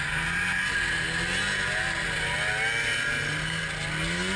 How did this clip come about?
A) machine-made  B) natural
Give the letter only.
B